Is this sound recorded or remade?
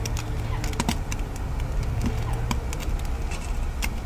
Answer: recorded